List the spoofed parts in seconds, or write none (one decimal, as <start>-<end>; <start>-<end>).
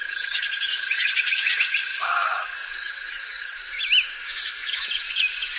0.0-5.6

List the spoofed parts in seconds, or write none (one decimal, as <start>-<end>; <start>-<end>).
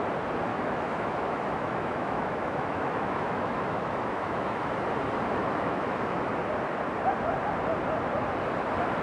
0.5-4.7; 5.4-6.3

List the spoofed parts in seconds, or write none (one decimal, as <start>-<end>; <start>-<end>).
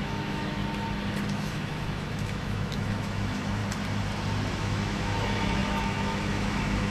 0.0-0.6; 1.3-3.6; 4.5-6.9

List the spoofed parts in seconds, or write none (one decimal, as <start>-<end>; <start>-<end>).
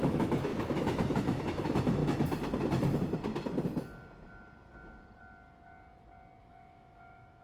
0.0-2.0; 6.4-7.4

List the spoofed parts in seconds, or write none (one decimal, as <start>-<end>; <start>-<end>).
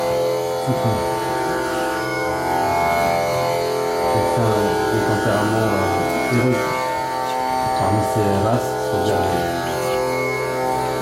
1.7-2.3